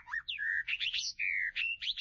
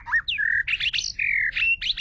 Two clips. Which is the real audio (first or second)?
second